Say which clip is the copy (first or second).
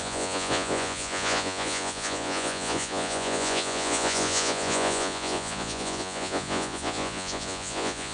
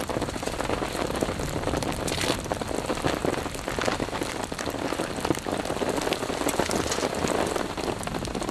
first